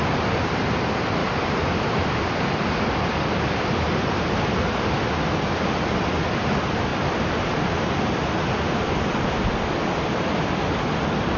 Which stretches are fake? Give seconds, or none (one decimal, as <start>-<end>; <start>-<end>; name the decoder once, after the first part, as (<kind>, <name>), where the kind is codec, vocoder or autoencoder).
1.2-4.8 (vocoder, BigVGAN v2); 6.9-7.8